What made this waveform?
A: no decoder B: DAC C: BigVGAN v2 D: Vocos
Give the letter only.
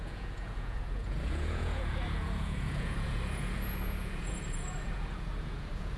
D